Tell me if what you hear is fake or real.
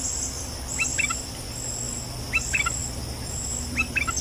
real